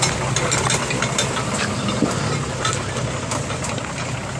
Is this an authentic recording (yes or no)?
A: yes